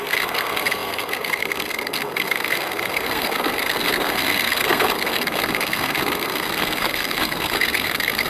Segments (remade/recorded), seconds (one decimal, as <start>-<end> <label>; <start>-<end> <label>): 0.0-8.3 remade